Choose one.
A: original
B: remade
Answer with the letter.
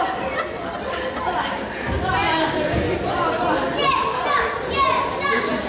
A